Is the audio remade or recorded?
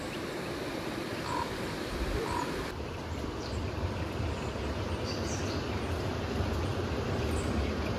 remade